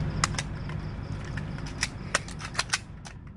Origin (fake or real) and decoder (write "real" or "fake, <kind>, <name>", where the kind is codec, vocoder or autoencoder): real